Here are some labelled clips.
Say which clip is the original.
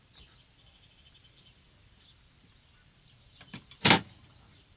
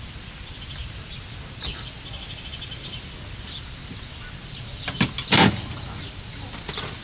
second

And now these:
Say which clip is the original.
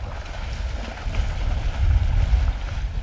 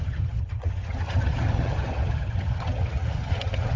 first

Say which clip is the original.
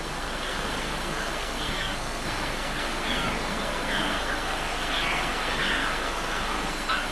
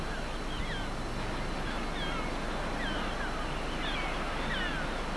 second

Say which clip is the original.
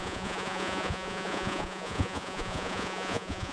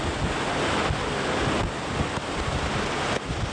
second